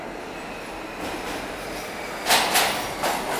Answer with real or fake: real